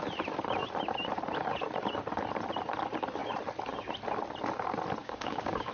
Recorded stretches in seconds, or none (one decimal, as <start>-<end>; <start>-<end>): 0.0-5.0